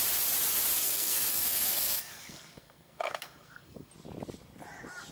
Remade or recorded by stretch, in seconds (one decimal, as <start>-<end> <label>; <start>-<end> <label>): 0.0-0.8 recorded; 0.8-3.9 remade; 3.9-5.1 recorded

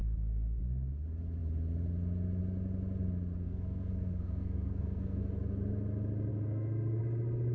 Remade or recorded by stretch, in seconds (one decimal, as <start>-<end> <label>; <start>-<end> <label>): 0.0-0.6 remade; 0.6-3.4 recorded; 3.4-5.2 remade; 5.2-6.3 recorded; 6.3-7.0 remade; 7.0-7.5 recorded

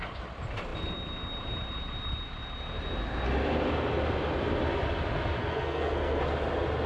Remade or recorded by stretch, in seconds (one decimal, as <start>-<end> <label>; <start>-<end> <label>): 0.0-5.4 recorded; 5.4-6.2 remade; 6.2-6.9 recorded

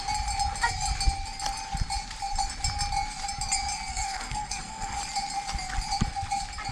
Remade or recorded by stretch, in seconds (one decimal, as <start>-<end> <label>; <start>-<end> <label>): 0.0-3.9 recorded; 3.9-5.0 remade; 5.0-6.7 recorded